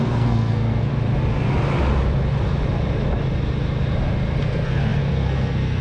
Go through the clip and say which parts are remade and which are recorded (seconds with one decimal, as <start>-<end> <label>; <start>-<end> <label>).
0.0-0.9 remade; 0.9-4.4 recorded; 4.4-5.8 remade